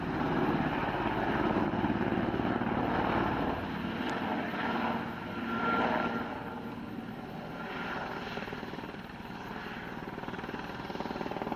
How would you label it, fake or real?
real